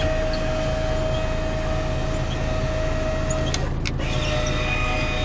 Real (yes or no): yes